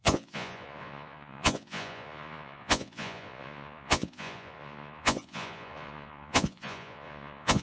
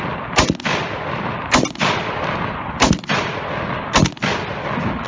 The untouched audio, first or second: second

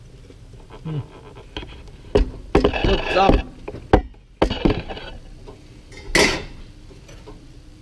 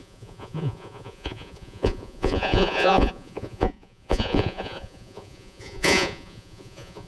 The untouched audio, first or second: first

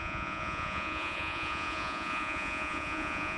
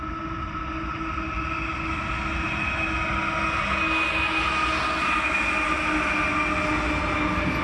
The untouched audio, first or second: second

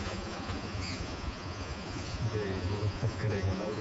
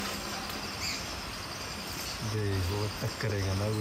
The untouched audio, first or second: second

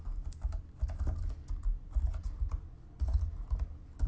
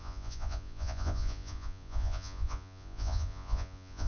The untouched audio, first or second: first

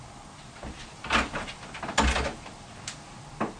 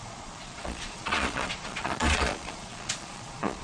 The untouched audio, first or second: first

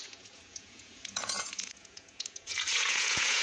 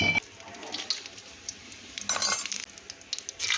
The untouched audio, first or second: second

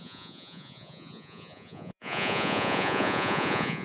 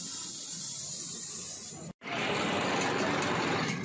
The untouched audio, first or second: second